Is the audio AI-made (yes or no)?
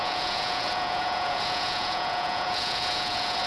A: yes